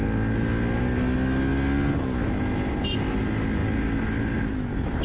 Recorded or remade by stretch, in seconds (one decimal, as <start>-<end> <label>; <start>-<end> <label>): 0.0-5.0 recorded

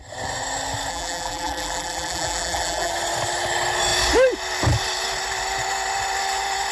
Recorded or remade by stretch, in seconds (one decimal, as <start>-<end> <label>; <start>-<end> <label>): 0.0-0.9 recorded; 0.9-2.9 remade; 2.9-6.7 recorded

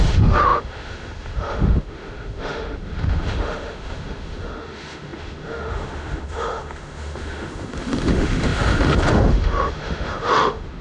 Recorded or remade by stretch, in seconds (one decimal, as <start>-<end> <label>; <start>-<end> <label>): 0.0-10.8 remade

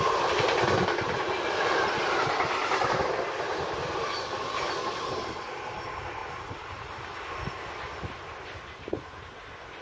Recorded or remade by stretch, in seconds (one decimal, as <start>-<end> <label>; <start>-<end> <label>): 0.0-9.8 recorded

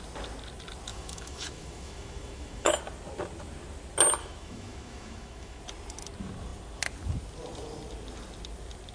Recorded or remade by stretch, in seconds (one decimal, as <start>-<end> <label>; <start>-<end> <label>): 0.0-0.9 recorded; 0.9-2.8 remade; 2.8-4.2 recorded; 4.2-5.6 remade; 5.6-8.9 recorded

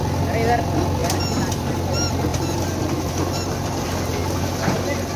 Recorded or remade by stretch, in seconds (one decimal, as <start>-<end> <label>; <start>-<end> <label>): 0.0-1.0 recorded; 1.0-1.7 remade; 1.7-5.2 recorded

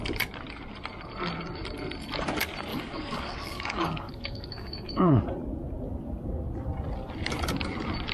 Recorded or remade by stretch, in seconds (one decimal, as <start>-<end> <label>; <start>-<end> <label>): 0.0-2.7 recorded; 2.7-5.1 remade; 5.1-8.1 recorded

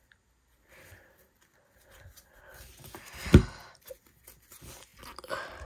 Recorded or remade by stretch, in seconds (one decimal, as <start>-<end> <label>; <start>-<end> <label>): 0.0-5.7 recorded